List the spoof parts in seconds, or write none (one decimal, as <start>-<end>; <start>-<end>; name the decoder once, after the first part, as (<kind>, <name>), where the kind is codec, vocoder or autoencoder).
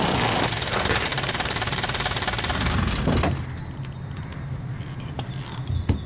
1.1-3.2 (vocoder, BigVGAN v2)